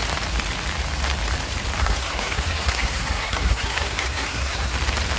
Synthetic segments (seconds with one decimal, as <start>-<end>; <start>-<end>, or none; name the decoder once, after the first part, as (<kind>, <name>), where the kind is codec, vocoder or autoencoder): 1.8-4.7 (codec, SNAC)